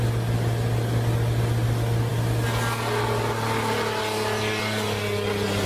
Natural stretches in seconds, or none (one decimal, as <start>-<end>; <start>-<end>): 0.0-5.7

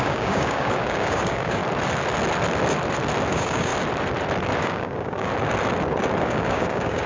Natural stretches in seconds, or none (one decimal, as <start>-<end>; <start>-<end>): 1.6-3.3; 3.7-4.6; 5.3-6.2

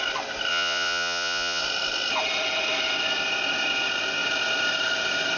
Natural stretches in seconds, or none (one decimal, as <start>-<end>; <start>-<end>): 0.0-0.5; 1.6-5.4

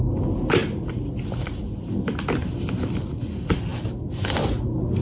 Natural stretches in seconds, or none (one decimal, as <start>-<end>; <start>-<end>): 0.0-5.0